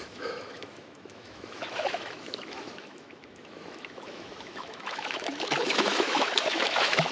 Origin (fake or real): fake